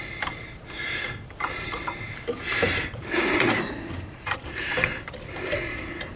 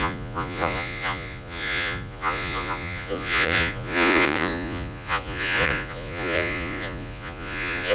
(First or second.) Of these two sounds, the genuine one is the first